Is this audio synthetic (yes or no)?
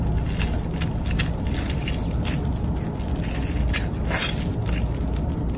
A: no